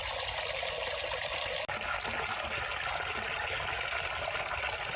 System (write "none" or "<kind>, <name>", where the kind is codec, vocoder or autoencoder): none